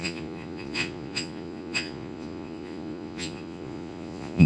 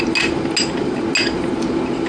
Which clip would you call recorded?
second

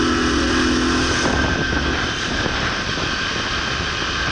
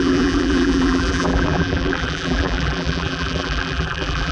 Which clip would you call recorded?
first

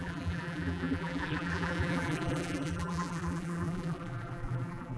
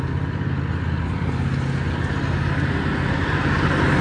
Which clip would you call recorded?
second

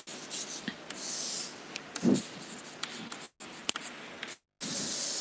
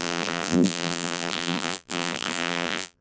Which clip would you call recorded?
first